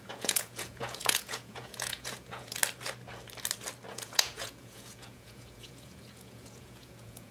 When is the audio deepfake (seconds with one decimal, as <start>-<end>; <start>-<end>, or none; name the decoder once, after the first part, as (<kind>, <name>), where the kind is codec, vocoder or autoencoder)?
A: 0.0-2.6 (vocoder, Vocos); 3.9-7.3